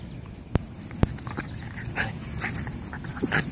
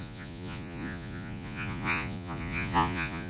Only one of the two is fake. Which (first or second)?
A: second